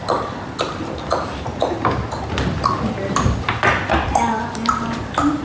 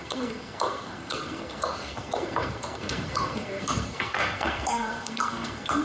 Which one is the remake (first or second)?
second